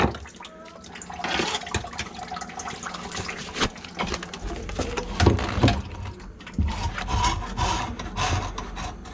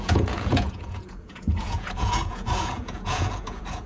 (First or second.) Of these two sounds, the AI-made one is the second